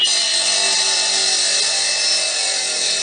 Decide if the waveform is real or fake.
real